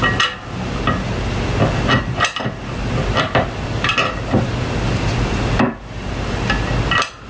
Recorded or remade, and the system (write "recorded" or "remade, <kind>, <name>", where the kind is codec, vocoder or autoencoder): recorded